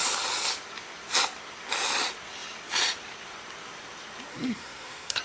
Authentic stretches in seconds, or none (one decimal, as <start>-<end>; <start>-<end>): 0.0-4.3